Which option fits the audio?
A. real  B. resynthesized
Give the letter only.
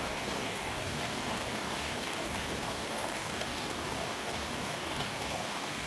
B